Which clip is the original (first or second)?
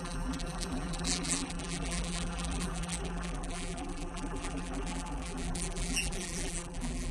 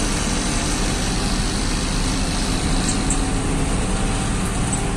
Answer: second